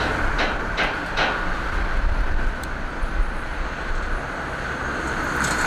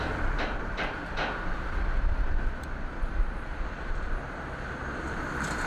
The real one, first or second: first